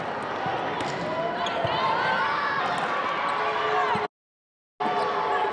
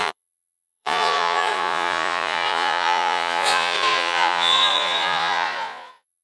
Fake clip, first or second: second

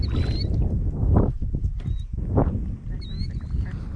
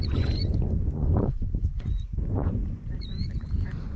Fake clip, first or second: second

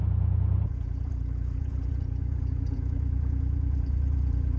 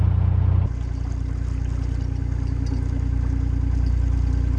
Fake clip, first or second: first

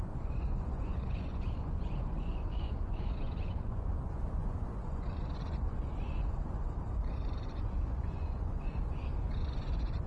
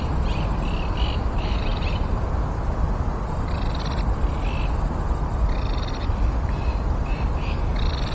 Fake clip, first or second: first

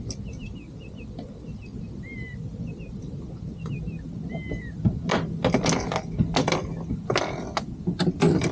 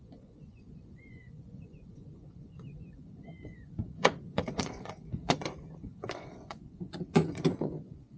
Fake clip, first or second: second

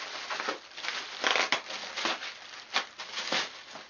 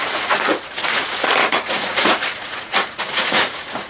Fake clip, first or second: second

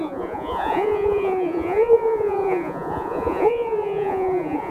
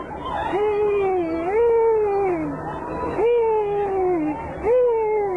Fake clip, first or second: first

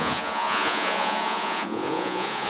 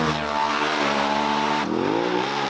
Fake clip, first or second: first